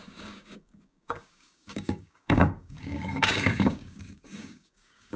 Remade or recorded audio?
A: remade